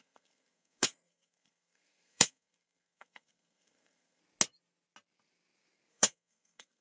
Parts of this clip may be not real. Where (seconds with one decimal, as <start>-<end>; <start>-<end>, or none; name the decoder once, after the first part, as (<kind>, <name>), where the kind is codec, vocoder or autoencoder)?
0.0-4.2 (codec, SNAC); 5.9-6.8